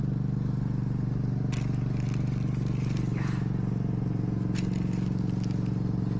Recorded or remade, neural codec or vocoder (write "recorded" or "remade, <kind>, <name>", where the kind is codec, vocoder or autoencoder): recorded